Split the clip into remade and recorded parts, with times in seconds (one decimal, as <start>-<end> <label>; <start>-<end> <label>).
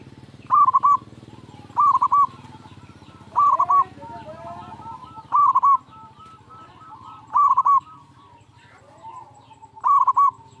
0.0-3.8 remade; 3.8-4.4 recorded; 4.4-10.6 remade